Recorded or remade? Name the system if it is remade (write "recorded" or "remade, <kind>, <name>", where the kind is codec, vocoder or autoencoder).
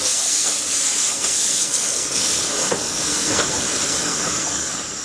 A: remade, codec, SNAC